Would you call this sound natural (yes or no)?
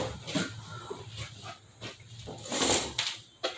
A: yes